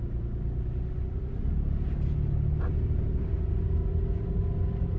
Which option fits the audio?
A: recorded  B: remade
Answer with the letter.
A